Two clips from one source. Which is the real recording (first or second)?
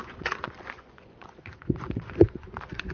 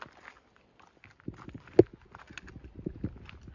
second